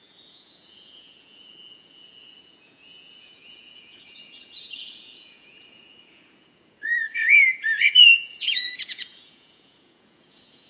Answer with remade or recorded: remade